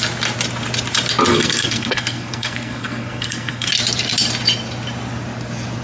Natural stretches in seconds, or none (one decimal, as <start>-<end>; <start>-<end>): 0.0-1.3; 3.7-5.8

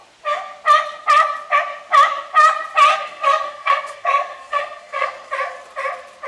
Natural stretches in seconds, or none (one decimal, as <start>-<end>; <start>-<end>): 0.0-2.9; 5.3-6.3

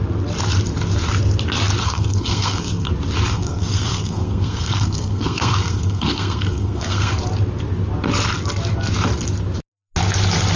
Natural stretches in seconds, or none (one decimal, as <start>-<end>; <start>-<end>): 0.0-1.8; 2.9-3.3; 7.1-10.6

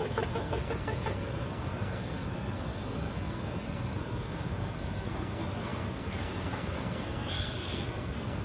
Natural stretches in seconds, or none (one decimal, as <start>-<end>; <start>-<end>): none

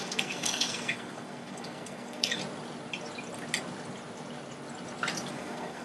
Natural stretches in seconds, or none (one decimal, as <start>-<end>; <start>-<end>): 2.4-5.3

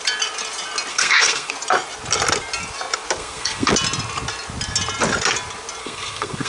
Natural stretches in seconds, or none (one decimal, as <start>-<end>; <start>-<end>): 0.0-0.9; 1.5-3.2; 3.7-5.8

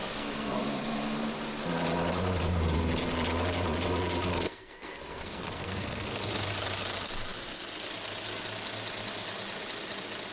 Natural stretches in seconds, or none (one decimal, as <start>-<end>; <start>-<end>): 0.6-4.3; 6.3-10.3

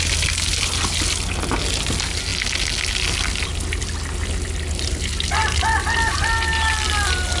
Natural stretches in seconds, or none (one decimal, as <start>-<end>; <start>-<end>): 0.0-7.4